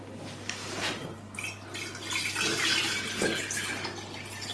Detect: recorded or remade recorded